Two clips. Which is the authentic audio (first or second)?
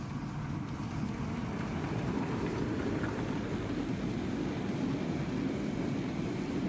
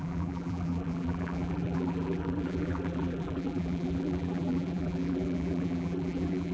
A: first